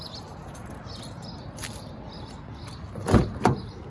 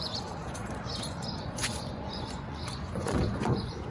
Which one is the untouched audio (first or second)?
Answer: first